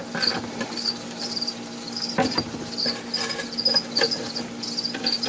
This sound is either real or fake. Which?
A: real